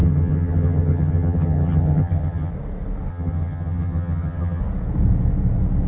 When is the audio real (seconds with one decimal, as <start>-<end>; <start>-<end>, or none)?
2.5-3.1; 4.6-5.9